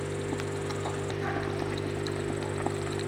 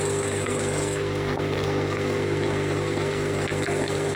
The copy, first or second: second